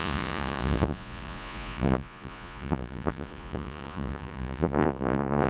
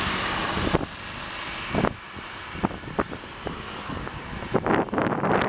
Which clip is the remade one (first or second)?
first